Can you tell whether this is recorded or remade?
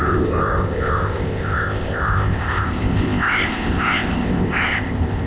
remade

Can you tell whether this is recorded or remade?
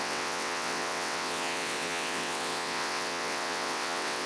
remade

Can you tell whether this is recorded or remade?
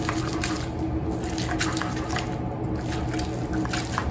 recorded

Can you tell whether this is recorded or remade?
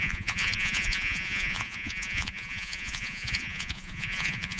remade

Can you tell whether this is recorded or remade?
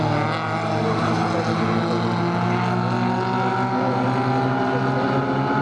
recorded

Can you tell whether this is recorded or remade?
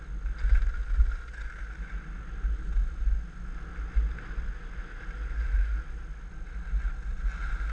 recorded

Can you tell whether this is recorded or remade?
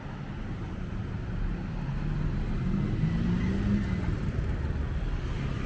recorded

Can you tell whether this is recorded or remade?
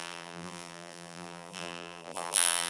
remade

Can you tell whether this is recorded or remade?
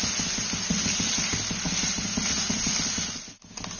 recorded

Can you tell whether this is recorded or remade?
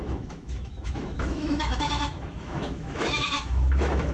remade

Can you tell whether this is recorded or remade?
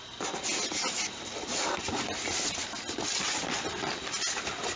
recorded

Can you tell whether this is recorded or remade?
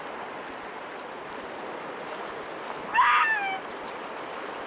recorded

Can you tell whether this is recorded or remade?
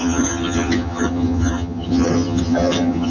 remade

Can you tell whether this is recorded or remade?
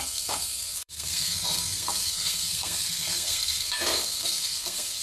remade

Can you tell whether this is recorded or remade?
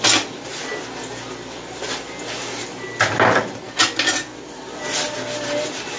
recorded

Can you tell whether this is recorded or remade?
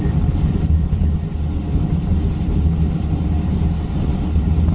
recorded